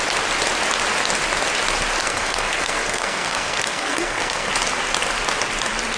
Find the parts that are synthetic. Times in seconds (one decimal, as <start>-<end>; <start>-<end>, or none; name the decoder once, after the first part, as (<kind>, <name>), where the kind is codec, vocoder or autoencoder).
2.0-4.5 (codec, SNAC)